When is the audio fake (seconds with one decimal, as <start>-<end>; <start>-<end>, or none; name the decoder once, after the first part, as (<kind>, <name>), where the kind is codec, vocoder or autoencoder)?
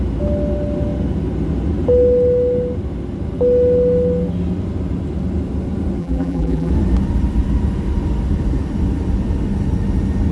6.0-6.7 (vocoder, BigVGAN v2)